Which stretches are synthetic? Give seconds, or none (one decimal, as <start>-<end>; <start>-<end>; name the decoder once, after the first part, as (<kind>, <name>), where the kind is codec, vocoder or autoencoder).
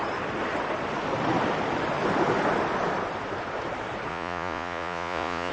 4.1-5.5 (vocoder, Vocos)